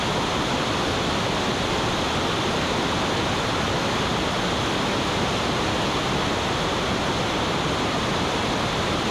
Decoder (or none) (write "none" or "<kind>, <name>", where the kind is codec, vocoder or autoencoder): none